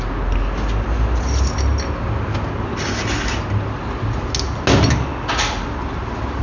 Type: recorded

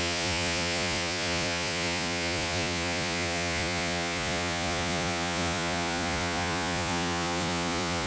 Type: remade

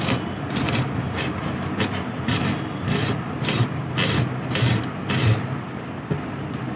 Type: recorded